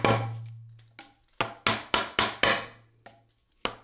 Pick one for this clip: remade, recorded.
recorded